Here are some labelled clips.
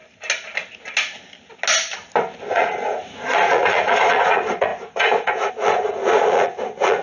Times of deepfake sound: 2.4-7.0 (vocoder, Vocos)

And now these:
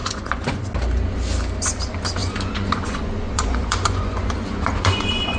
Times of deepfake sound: 0.0-0.6 (vocoder, Vocos); 2.2-5.4

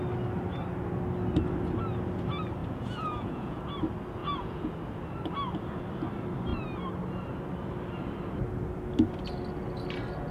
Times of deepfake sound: 2.6-3.6 (vocoder, Vocos); 4.2-4.7

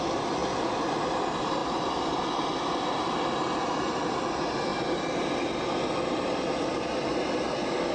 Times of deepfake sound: 0.4-0.9 (vocoder, BigVGAN v2); 1.6-2.2; 4.7-6.7

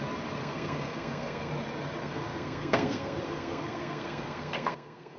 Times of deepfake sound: 0.4-1.5 (codec, SNAC); 2.0-5.2

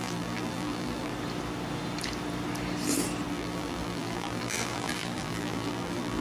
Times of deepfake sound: 0.0-1.1 (vocoder, BigVGAN v2); 3.3-6.2

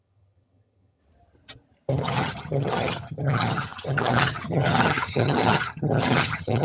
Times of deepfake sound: 0.0-1.0 (vocoder, HiFi-GAN); 1.9-6.6

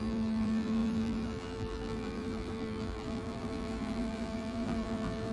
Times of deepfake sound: 0.0-5.3 (vocoder, BigVGAN v2)